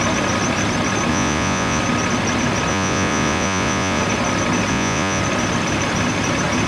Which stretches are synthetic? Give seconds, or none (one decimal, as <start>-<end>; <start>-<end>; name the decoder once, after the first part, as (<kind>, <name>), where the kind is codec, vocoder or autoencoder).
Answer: 1.1-1.8 (vocoder, Vocos); 2.7-4.0; 4.7-5.2